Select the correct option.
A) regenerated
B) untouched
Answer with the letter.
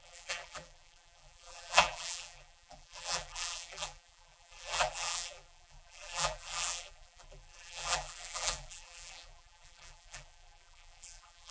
A